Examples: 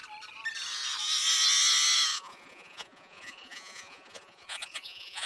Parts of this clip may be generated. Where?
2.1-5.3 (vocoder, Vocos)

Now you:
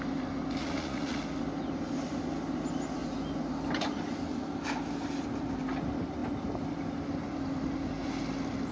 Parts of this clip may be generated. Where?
0.6-1.2 (vocoder, Vocos)

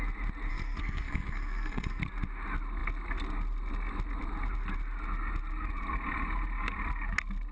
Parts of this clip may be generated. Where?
0.5-2.0 (codec, SNAC)